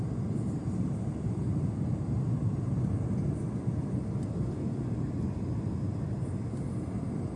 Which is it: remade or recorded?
recorded